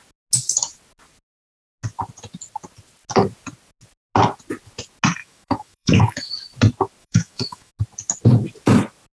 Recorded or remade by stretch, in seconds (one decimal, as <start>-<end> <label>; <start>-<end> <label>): 0.0-5.2 recorded; 5.2-6.3 remade; 6.3-7.0 recorded; 7.0-7.7 remade; 7.7-9.1 recorded